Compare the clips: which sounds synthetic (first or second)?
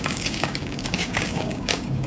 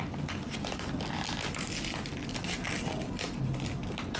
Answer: first